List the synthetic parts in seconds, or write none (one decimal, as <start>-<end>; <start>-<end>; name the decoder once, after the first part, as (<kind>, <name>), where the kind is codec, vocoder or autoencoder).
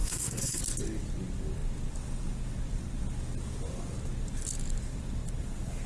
0.0-0.6 (codec, SNAC)